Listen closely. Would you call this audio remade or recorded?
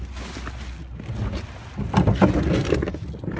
recorded